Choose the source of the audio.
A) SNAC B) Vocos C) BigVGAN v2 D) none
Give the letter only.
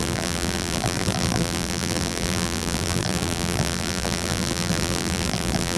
C